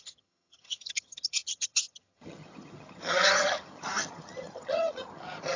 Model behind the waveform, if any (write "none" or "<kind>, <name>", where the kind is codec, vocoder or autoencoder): vocoder, HiFi-GAN